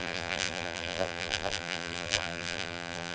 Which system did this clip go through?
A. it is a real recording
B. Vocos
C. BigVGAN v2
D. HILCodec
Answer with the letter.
C